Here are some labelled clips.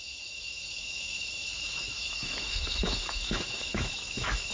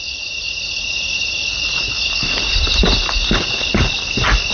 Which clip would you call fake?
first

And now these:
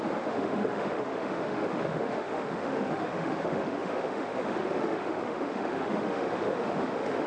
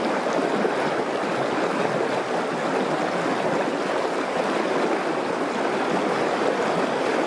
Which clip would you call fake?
first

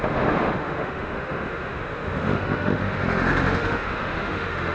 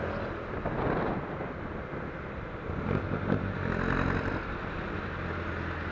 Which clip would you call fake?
first